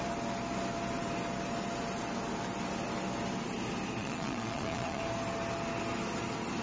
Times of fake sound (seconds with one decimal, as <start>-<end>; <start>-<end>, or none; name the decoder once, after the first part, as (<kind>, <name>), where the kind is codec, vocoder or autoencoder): 4.0-5.0 (vocoder, Vocos)